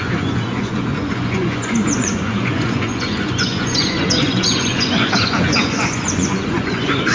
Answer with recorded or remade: remade